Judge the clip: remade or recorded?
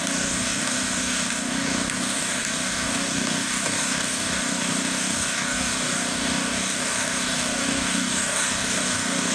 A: remade